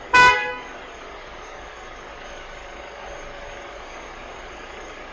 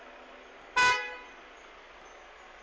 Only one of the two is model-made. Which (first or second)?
first